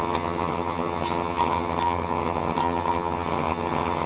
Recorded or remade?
remade